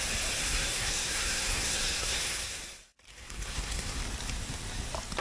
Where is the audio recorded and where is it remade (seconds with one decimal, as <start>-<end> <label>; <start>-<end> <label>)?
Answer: 0.0-0.4 recorded; 0.4-2.6 remade; 2.6-3.1 recorded; 3.1-4.0 remade; 4.0-5.2 recorded